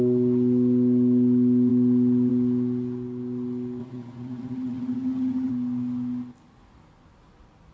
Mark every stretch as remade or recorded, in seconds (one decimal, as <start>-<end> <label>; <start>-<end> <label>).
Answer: 0.0-3.8 recorded; 3.8-5.5 remade; 5.5-7.7 recorded